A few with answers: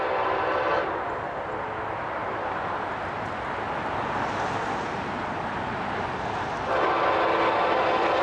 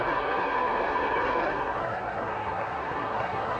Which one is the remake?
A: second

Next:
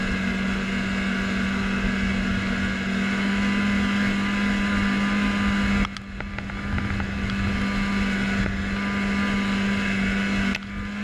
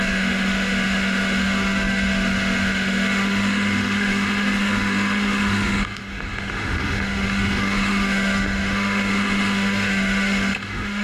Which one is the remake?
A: second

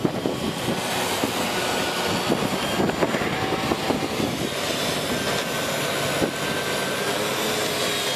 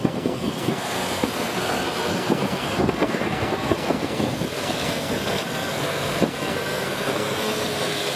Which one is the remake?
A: second